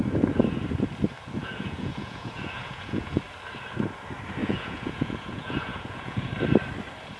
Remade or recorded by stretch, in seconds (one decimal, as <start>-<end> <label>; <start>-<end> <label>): 0.0-1.4 recorded; 1.4-3.2 remade; 3.2-4.4 recorded; 4.4-6.3 remade; 6.3-7.2 recorded